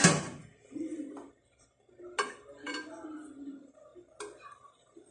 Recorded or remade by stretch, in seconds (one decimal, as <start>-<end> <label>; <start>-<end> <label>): 0.0-5.1 recorded